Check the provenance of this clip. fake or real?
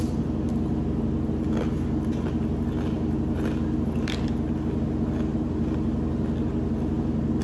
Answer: real